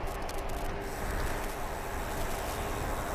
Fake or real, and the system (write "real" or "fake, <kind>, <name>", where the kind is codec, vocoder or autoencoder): real